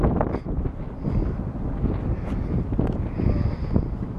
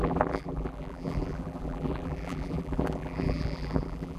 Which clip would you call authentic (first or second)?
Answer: first